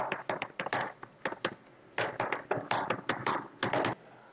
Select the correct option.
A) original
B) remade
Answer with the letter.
A